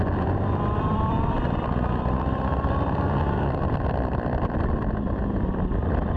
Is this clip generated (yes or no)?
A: yes